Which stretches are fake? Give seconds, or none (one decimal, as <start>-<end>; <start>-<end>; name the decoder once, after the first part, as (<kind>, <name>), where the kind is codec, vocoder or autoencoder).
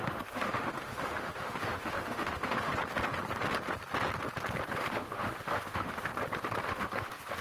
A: 0.0-2.7 (autoencoder, DAC-VAE); 4.8-6.1; 6.6-7.4